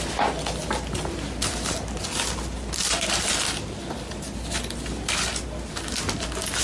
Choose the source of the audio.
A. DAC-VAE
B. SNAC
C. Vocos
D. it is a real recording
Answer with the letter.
D